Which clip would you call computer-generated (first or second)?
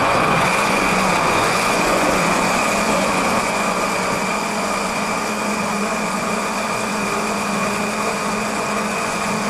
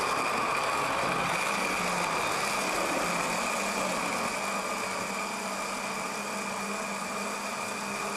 first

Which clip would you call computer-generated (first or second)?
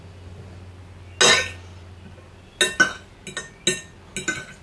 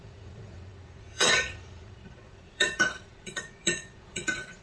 second